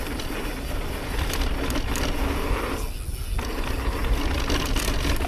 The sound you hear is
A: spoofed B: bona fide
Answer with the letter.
B